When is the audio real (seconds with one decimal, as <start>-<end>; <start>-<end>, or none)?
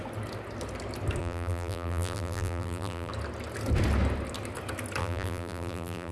0.0-1.2; 3.1-5.0